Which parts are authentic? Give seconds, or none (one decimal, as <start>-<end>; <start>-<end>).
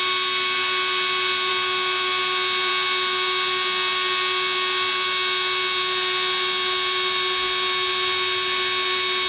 0.0-9.3